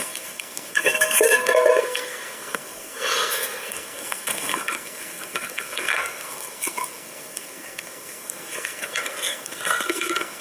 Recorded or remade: remade